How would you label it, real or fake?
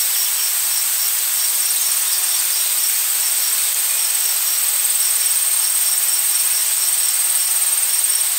real